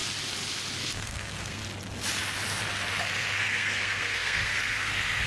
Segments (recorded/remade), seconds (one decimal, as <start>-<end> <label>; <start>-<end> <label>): 0.0-0.8 recorded; 0.8-1.6 remade; 1.6-3.0 recorded; 3.0-5.3 remade